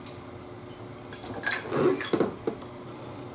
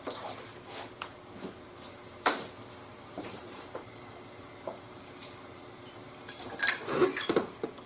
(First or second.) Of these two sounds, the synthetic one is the second